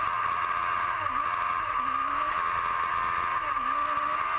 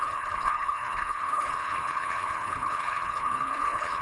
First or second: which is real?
first